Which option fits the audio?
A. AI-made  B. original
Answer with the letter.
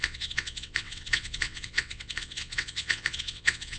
A